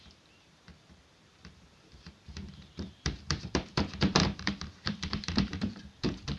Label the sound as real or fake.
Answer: fake